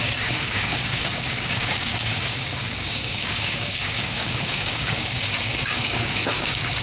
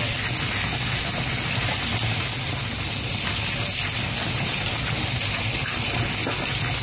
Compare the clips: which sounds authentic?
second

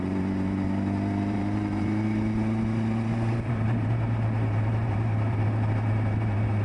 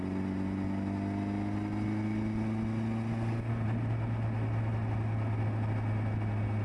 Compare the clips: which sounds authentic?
second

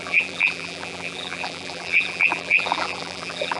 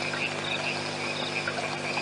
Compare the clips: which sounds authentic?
second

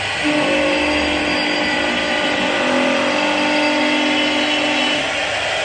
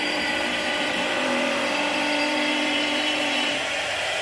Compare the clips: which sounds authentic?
first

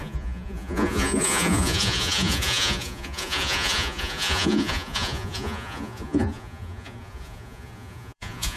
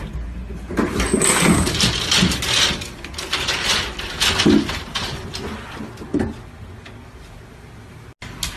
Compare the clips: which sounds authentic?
second